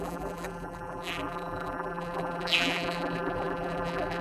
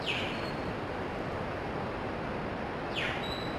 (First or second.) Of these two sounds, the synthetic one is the first